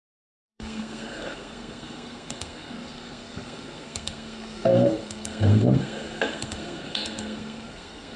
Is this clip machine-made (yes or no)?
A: yes